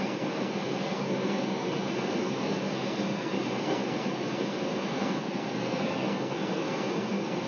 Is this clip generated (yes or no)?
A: yes